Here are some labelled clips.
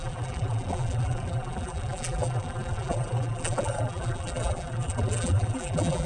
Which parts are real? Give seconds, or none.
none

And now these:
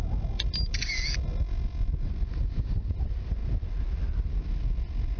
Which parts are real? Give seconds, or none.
0.0-1.3; 2.4-5.2

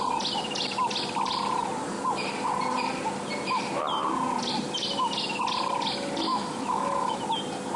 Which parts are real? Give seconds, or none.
0.0-6.3; 7.2-7.8

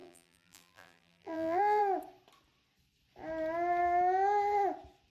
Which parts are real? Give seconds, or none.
1.8-5.1

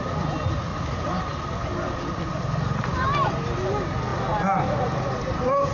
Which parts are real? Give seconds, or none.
0.0-0.7; 3.3-5.7

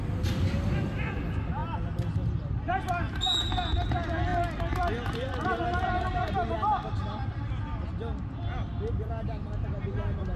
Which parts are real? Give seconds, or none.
0.0-10.4

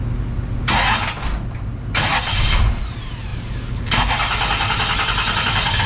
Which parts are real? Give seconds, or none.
0.0-3.3; 4.1-5.9